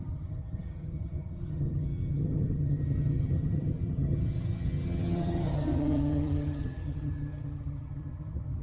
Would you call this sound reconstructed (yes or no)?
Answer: yes